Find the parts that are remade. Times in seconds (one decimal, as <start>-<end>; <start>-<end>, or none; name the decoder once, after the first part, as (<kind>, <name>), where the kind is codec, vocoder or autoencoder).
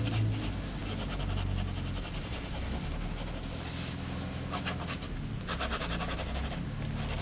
none